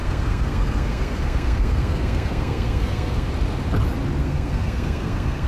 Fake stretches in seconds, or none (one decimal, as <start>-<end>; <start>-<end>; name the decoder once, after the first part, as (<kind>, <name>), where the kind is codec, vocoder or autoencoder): 0.0-3.3 (codec, SNAC); 4.2-5.5